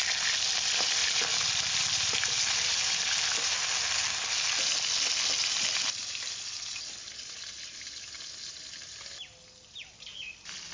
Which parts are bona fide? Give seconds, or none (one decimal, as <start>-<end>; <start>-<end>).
0.0-10.7